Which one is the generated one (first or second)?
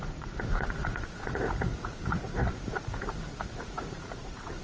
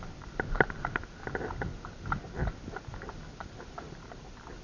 first